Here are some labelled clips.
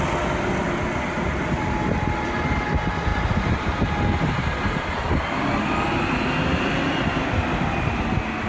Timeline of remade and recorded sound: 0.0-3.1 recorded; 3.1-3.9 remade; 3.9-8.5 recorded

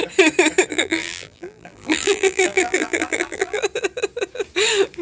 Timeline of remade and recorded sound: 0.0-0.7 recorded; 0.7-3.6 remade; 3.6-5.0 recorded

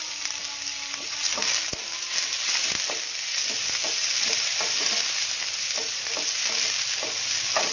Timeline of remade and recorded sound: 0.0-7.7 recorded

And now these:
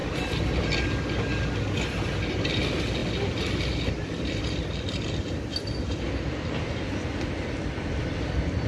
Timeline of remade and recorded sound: 0.0-8.7 recorded

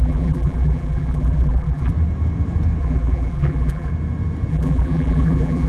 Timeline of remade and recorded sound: 0.0-1.9 remade; 1.9-2.8 recorded; 2.8-3.9 remade; 3.9-4.5 recorded; 4.5-5.7 remade